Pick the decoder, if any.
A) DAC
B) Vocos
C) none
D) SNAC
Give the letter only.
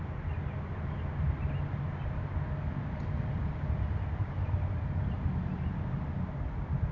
C